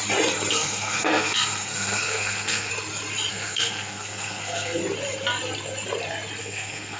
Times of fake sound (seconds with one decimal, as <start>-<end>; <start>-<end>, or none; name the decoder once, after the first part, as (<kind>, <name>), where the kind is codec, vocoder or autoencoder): 0.5-2.7 (codec, SNAC); 3.3-4.8; 6.4-7.0